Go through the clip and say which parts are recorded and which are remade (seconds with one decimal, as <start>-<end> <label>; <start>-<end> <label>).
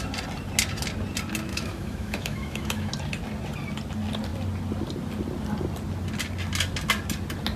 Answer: 0.0-1.5 recorded; 1.5-2.9 remade; 2.9-7.6 recorded